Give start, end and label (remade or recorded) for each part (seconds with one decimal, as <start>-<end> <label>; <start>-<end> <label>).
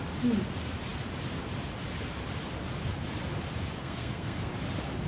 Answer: 0.0-3.8 recorded; 3.8-4.5 remade; 4.5-5.1 recorded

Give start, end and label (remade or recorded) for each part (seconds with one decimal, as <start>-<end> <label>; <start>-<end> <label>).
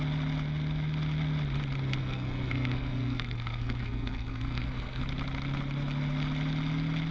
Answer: 0.0-2.0 recorded; 2.0-5.0 remade; 5.0-7.1 recorded